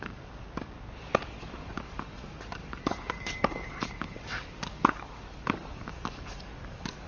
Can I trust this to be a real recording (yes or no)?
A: no